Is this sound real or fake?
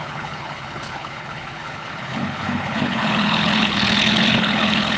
fake